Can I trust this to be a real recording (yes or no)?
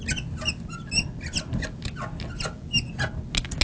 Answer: yes